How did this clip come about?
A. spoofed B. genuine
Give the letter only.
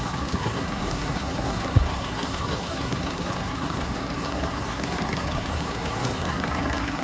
A